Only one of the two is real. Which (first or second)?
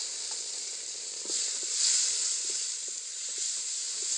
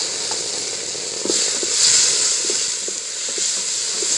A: second